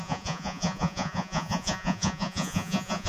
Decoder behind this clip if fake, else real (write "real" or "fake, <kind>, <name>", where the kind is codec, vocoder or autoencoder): fake, vocoder, Vocos